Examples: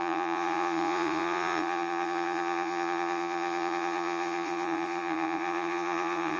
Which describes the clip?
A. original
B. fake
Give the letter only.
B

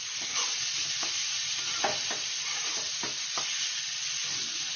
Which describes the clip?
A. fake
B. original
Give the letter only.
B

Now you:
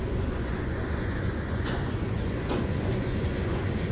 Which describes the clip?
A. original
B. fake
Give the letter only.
B